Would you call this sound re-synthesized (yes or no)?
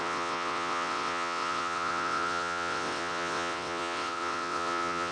yes